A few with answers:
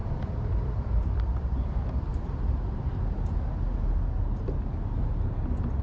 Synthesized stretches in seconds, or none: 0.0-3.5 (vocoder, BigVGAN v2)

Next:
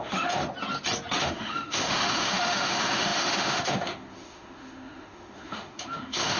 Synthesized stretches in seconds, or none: 0.0-0.4 (autoencoder, DAC-VAE); 1.2-6.4

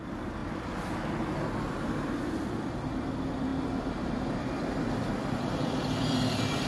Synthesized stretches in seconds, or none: 0.4-1.0 (vocoder, BigVGAN v2); 3.5-6.7

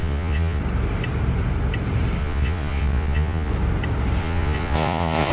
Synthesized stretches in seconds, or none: 0.0-0.6 (vocoder, Vocos); 2.2-3.5; 4.2-5.3

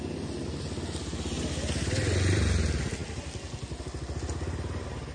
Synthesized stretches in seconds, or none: none

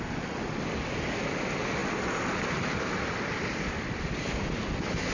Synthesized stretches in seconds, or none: none

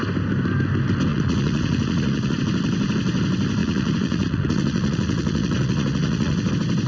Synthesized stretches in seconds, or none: 1.1-2.4 (vocoder, Vocos); 3.6-6.5